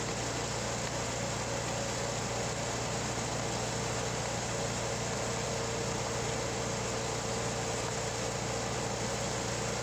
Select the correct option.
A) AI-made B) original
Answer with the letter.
B